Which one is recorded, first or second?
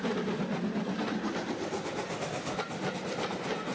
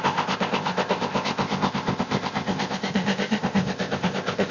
first